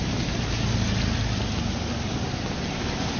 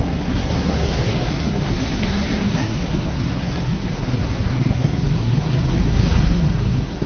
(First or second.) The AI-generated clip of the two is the second